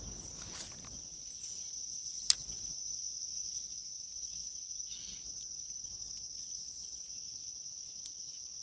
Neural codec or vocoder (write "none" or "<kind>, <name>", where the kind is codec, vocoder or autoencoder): none